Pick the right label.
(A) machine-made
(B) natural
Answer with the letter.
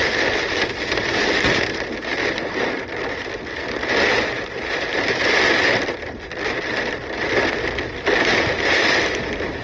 B